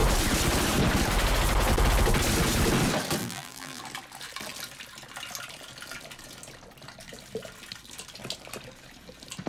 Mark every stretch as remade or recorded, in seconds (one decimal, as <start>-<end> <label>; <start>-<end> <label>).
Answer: 0.0-3.2 recorded; 3.2-3.8 remade; 3.8-9.5 recorded